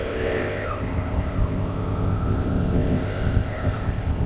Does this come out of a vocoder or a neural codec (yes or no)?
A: yes